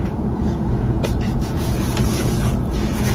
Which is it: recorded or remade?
remade